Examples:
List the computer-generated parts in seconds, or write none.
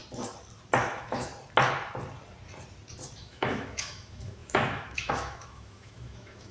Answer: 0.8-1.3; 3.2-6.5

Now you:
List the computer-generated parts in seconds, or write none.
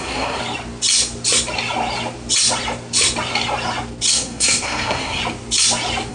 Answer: 0.0-0.4; 4.1-5.2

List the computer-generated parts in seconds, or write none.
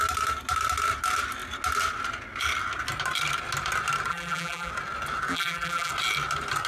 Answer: 4.1-4.7; 5.3-5.9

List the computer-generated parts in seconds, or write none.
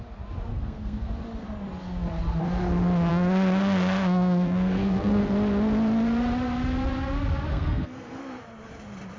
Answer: 0.5-1.1; 3.1-5.2; 7.5-8.2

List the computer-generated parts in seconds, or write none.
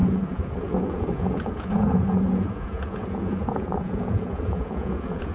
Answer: 0.0-5.3